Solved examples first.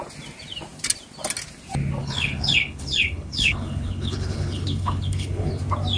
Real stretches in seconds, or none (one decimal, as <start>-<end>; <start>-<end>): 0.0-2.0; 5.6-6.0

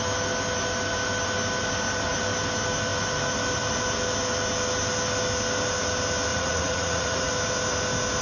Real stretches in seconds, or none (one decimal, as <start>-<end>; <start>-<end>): 0.0-6.3; 7.3-8.2

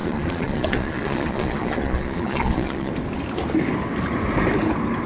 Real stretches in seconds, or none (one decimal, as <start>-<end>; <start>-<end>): 2.9-5.1

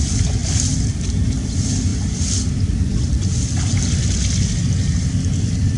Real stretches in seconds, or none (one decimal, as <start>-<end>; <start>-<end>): 0.0-1.9; 2.5-5.8

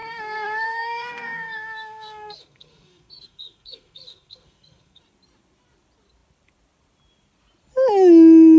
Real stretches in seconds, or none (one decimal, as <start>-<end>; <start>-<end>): 5.0-8.6